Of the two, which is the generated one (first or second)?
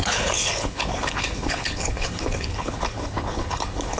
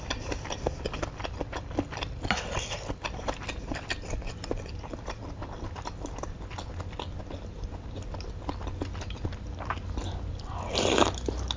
first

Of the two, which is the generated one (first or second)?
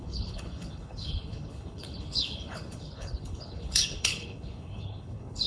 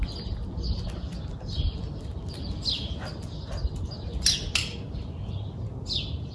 first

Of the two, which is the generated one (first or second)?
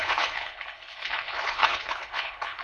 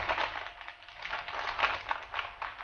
first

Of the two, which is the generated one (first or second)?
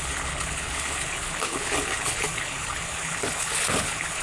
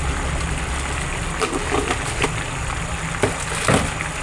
first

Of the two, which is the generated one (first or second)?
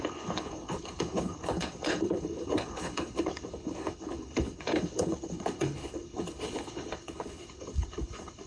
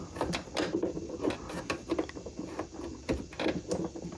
first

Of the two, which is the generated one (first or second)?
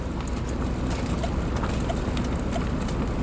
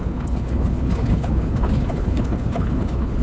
second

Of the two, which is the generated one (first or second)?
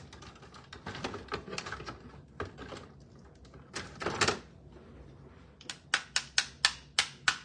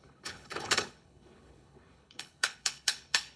second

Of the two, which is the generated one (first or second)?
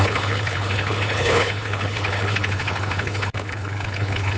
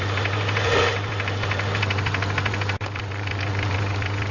first